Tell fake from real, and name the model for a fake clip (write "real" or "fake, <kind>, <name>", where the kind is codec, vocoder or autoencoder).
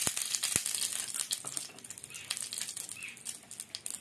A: real